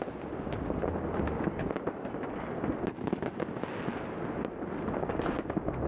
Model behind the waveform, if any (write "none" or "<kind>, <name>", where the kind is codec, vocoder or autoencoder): none